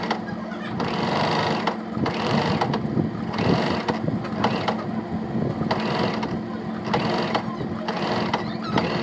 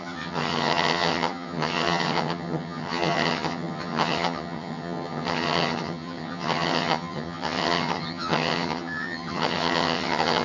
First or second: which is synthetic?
second